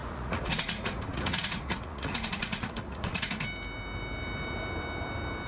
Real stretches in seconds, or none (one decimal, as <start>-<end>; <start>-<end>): 3.3-5.5